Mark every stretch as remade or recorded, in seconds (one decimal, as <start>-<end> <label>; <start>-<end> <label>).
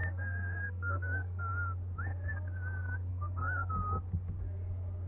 0.0-1.5 remade; 1.5-3.1 recorded; 3.1-3.7 remade; 3.7-5.1 recorded